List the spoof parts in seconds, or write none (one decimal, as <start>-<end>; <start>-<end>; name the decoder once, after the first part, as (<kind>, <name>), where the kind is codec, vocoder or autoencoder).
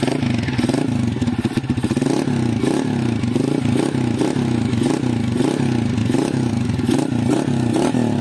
6.0-6.5 (vocoder, BigVGAN v2)